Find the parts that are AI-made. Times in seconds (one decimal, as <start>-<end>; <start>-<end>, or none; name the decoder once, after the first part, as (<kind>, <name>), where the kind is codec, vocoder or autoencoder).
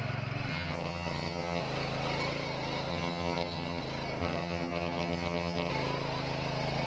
0.5-1.6 (vocoder, HiFi-GAN); 2.9-3.8; 4.2-5.7